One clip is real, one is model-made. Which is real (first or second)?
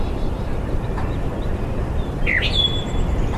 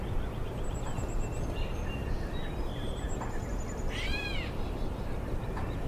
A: second